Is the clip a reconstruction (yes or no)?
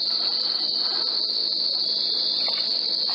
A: no